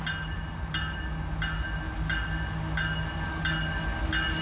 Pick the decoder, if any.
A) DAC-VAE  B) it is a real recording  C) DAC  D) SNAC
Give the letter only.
B